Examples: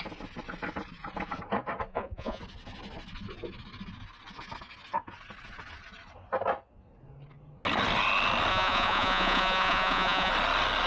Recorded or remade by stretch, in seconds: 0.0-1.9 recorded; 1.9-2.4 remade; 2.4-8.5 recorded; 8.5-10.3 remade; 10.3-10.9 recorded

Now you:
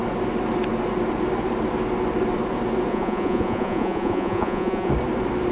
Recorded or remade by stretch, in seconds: 0.0-2.9 recorded; 2.9-4.9 remade; 4.9-5.5 recorded

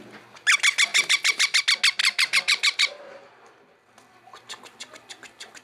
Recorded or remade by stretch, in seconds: 0.0-0.9 recorded; 0.9-1.6 remade; 1.6-2.0 recorded; 2.0-3.0 remade; 3.0-5.6 recorded

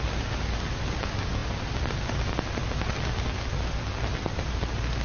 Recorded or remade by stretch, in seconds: 0.0-5.0 recorded

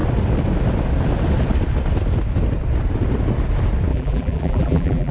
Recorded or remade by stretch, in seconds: 0.0-3.9 recorded; 3.9-5.1 remade

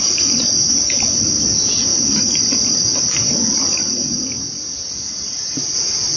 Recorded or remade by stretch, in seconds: 0.0-6.2 recorded

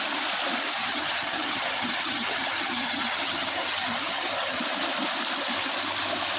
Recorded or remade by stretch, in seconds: 0.0-0.8 recorded; 0.8-4.6 remade; 4.6-6.4 recorded

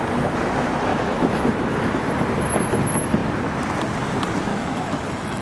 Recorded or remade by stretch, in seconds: 0.0-0.9 recorded; 0.9-2.0 remade; 2.0-4.5 recorded; 4.5-5.4 remade